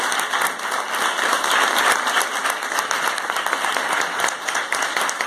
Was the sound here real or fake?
real